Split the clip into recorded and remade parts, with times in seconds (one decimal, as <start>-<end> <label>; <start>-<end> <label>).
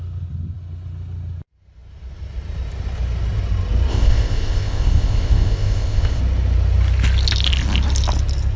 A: 0.0-3.9 recorded; 3.9-6.2 remade; 6.2-8.6 recorded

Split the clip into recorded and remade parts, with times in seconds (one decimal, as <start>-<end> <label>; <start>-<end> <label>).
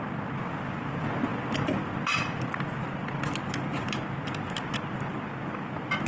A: 0.0-6.1 recorded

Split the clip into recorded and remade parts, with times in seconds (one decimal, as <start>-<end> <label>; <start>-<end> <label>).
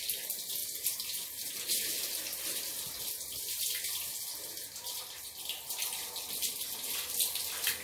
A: 0.0-7.8 recorded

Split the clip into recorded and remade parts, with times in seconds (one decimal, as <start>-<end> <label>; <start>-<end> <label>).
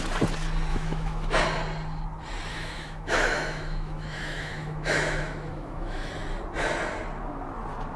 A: 0.0-0.7 recorded; 0.7-1.4 remade; 1.4-2.5 recorded; 2.5-6.1 remade; 6.1-8.0 recorded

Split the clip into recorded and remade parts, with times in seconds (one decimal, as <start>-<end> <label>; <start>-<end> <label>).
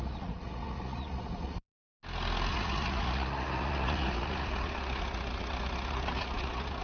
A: 0.0-1.9 remade; 1.9-2.5 recorded; 2.5-6.8 remade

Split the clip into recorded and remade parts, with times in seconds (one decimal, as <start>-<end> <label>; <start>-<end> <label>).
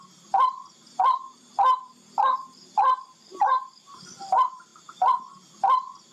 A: 0.0-6.1 recorded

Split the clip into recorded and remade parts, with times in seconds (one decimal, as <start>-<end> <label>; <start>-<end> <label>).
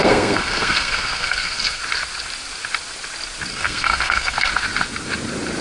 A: 0.0-1.8 remade; 1.8-3.5 recorded; 3.5-4.5 remade; 4.5-5.6 recorded